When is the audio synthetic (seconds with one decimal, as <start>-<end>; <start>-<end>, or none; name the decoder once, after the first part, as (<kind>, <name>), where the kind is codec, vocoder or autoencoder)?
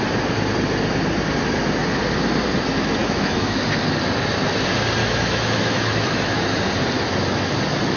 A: 3.0-3.6 (autoencoder, DAC-VAE); 5.0-6.6